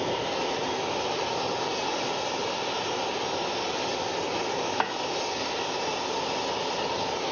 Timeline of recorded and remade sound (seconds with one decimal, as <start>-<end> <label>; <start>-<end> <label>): 0.0-7.3 recorded